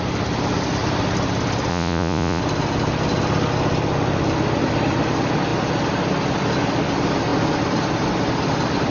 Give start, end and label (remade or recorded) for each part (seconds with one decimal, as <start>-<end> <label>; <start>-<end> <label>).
0.0-1.7 recorded; 1.7-2.4 remade; 2.4-8.9 recorded